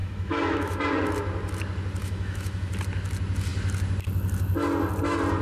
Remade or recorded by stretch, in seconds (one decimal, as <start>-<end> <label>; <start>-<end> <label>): 0.0-0.8 remade; 0.8-2.0 recorded; 2.0-2.7 remade; 2.7-5.4 recorded